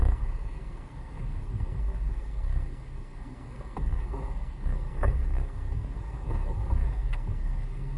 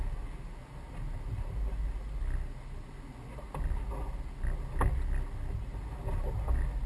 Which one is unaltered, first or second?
second